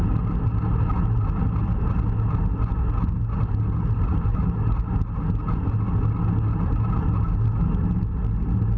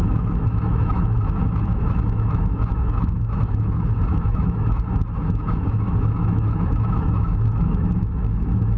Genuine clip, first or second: first